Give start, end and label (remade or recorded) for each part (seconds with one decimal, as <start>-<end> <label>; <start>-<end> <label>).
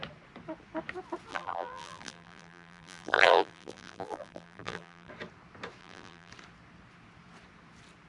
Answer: 0.0-1.3 recorded; 1.3-5.1 remade; 5.1-5.8 recorded; 5.8-6.3 remade; 6.3-8.1 recorded